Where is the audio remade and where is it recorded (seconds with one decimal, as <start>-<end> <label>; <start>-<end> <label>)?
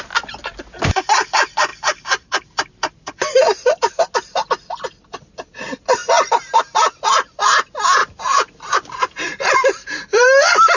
0.0-1.7 recorded; 1.7-3.9 remade; 3.9-8.0 recorded; 8.0-10.8 remade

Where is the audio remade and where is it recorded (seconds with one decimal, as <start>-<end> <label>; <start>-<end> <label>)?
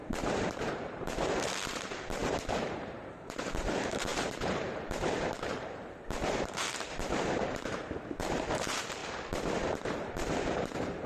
0.0-9.0 remade; 9.0-9.9 recorded; 9.9-11.1 remade